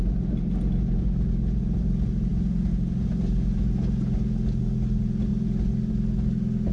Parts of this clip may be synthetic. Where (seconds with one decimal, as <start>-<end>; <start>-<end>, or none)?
none